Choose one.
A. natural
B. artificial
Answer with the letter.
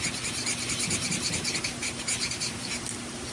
A